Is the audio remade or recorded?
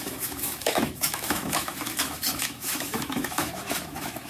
remade